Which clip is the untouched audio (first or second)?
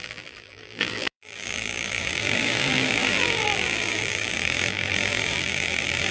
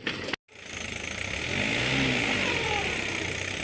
second